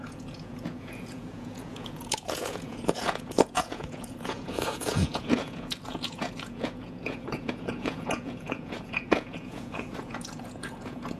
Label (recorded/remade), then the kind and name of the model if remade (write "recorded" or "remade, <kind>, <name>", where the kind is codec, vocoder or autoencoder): remade, vocoder, Vocos